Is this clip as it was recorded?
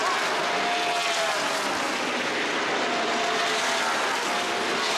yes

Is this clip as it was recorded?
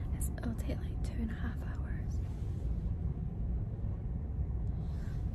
yes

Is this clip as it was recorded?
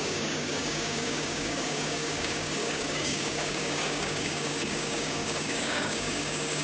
no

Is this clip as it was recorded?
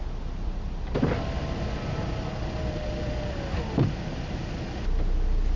yes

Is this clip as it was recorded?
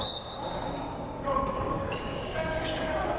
no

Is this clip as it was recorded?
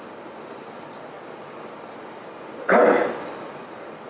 yes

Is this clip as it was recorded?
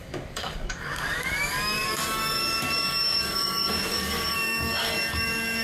no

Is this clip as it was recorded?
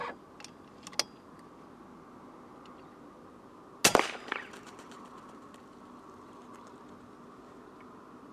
yes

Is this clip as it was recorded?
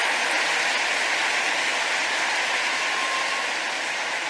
yes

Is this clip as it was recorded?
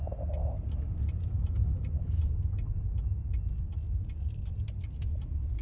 yes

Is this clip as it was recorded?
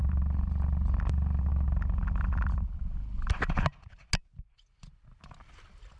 yes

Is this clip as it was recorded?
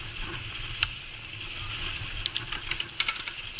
yes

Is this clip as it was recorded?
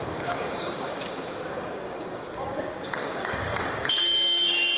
no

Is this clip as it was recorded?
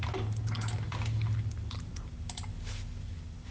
yes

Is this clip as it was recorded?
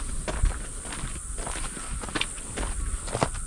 yes